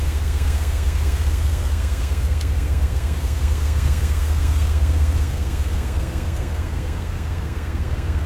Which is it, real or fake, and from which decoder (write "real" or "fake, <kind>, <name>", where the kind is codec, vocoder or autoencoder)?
fake, codec, SNAC